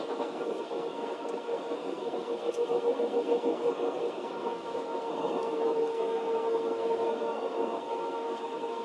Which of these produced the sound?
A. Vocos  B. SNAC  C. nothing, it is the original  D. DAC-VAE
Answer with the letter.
B